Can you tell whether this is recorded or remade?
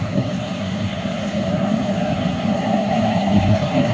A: remade